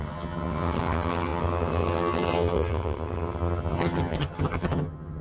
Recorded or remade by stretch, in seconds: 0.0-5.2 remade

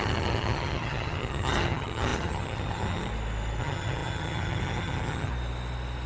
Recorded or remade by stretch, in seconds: 0.0-3.1 remade; 3.1-3.6 recorded; 3.6-5.3 remade; 5.3-6.1 recorded

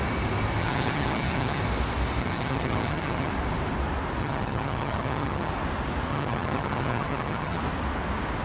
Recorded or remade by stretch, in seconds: 0.0-0.6 recorded; 0.6-1.6 remade; 1.6-2.2 recorded; 2.2-3.3 remade; 3.3-4.2 recorded; 4.2-5.5 remade; 5.5-6.1 recorded; 6.1-7.6 remade; 7.6-8.4 recorded

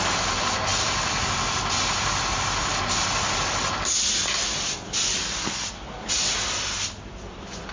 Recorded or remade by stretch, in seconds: 0.0-7.7 recorded

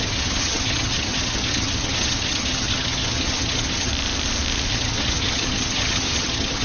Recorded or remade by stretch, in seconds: 0.0-3.9 remade; 3.9-4.7 recorded; 4.7-6.6 remade